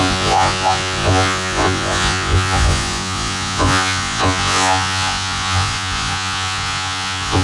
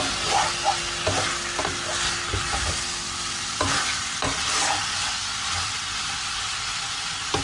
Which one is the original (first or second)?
second